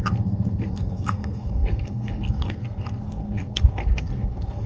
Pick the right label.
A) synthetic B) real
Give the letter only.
A